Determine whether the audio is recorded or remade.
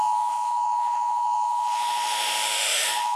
remade